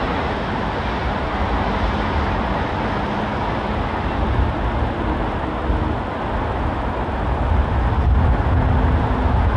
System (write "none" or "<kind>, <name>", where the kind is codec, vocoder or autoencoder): none